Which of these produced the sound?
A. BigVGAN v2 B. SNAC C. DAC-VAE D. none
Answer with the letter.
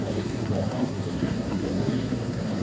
B